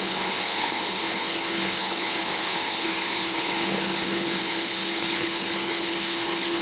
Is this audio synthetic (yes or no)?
yes